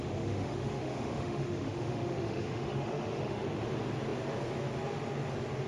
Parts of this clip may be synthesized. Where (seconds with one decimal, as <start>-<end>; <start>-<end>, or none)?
0.0-3.4